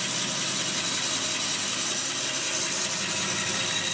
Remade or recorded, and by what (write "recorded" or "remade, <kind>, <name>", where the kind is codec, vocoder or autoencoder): recorded